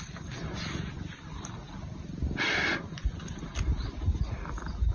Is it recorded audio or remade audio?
recorded